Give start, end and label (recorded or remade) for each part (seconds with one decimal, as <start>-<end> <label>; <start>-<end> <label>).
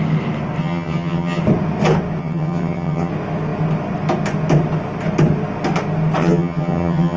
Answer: 0.0-0.6 recorded; 0.6-1.4 remade; 1.4-2.2 recorded; 2.2-3.1 remade; 3.1-6.2 recorded; 6.2-7.2 remade